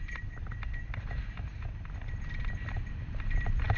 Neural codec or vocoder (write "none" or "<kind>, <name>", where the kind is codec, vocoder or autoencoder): none